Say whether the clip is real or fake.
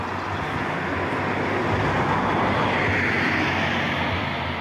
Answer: real